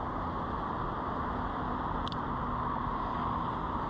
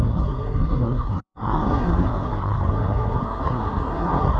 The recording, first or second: first